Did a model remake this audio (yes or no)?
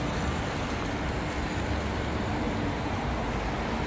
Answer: no